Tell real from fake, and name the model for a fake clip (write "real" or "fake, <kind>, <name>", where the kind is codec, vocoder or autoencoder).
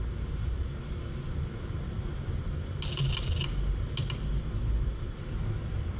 real